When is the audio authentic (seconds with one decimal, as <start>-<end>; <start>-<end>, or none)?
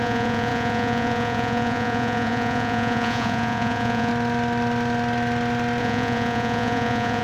4.1-5.8